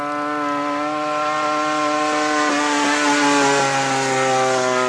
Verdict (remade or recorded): recorded